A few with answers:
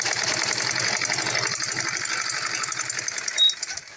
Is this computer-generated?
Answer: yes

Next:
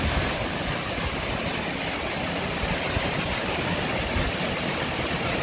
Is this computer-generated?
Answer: no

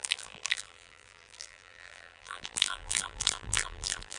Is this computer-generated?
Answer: yes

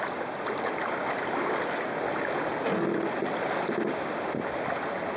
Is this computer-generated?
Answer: no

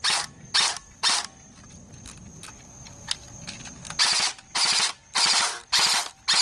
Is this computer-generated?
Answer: no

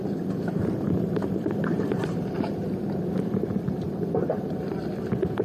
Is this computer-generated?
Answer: yes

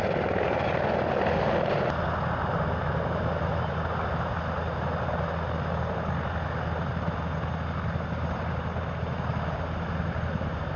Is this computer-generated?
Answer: no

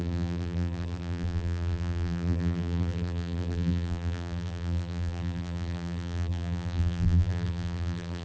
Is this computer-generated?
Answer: yes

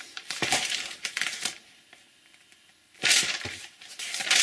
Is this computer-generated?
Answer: yes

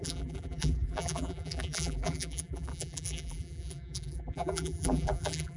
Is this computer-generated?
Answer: yes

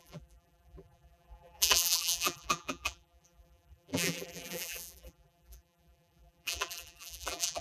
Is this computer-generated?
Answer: yes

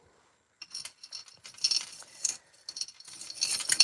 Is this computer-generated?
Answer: no